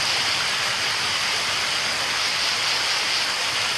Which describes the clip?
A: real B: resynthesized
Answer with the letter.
A